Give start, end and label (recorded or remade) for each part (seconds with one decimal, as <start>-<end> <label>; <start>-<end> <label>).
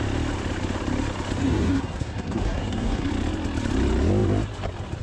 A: 0.0-1.4 recorded; 1.4-3.1 remade; 3.1-5.0 recorded